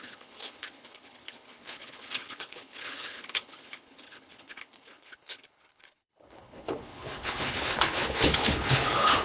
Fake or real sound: fake